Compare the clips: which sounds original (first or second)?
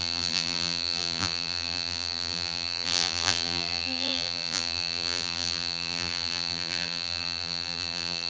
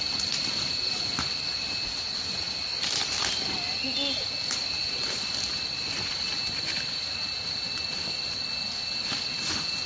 second